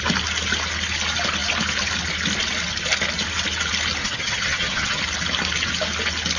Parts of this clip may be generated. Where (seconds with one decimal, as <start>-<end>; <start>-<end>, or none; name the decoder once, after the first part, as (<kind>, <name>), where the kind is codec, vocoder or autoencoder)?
4.0-5.0 (vocoder, HiFi-GAN)